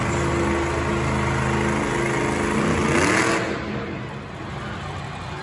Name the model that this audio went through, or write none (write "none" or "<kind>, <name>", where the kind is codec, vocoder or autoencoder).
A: none